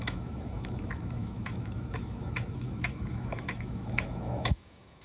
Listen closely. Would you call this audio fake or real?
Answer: fake